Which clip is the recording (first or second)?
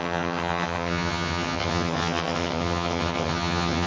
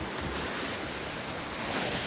second